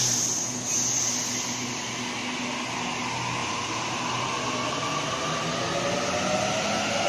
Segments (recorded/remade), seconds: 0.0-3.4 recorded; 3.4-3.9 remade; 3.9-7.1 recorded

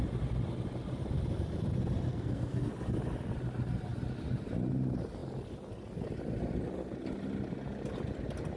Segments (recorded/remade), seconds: 0.0-2.1 recorded; 2.1-2.7 remade; 2.7-8.6 recorded

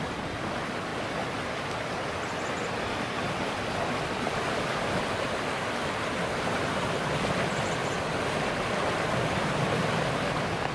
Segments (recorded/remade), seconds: 0.0-0.9 remade; 0.9-3.0 recorded; 3.0-7.8 remade; 7.8-9.6 recorded; 9.6-10.7 remade

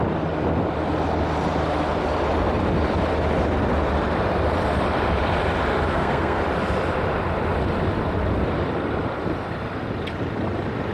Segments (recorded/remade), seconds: 0.0-5.9 recorded; 5.9-6.4 remade; 6.4-10.9 recorded

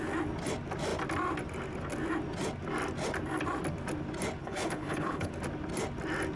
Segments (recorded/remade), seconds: 0.0-4.4 recorded; 4.4-5.3 remade; 5.3-6.4 recorded